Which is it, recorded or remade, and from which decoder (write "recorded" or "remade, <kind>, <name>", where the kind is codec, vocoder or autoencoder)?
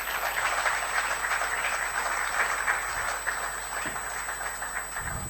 recorded